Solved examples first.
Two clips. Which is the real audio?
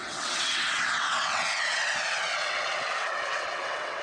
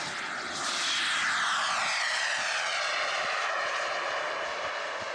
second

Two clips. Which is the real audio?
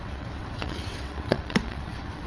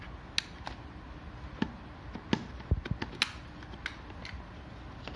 second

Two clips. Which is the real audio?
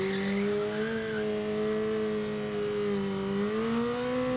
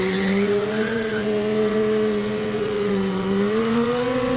first